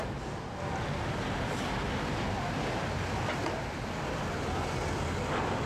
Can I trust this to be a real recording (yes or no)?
yes